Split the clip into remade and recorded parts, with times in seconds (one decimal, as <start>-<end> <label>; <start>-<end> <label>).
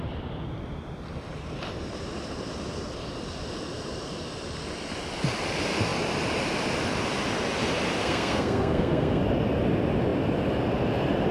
0.0-8.0 recorded; 8.0-9.2 remade; 9.2-11.3 recorded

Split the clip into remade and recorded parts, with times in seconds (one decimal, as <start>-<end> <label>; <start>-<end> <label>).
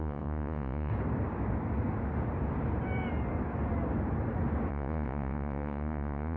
0.0-0.9 remade; 0.9-4.7 recorded; 4.7-6.4 remade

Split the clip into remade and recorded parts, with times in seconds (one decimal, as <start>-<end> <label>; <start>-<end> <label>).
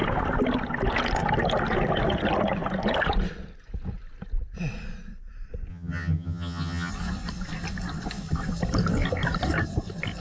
0.0-5.7 recorded; 5.7-6.9 remade; 6.9-10.2 recorded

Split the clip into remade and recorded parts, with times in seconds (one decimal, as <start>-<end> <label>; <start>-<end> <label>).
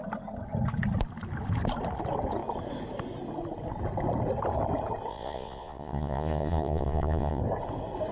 0.0-5.1 recorded; 5.1-7.4 remade; 7.4-8.1 recorded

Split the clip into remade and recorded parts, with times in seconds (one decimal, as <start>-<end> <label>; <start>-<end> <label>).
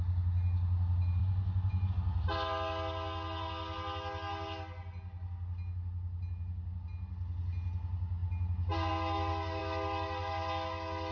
0.0-1.2 recorded; 1.2-1.9 remade; 1.9-11.1 recorded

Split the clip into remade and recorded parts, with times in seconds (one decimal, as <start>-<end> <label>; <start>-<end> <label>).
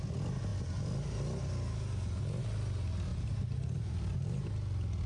0.0-3.1 recorded; 3.1-4.5 remade; 4.5-5.1 recorded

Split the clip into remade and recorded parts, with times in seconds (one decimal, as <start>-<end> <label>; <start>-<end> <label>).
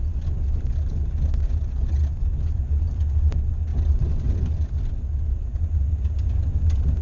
0.0-3.7 recorded; 3.7-5.9 remade; 5.9-7.0 recorded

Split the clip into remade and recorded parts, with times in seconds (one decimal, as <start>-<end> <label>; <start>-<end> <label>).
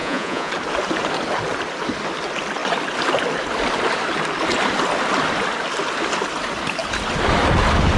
0.0-0.5 remade; 0.5-8.0 recorded